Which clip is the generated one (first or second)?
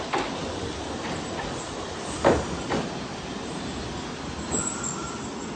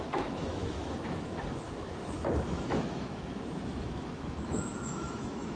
second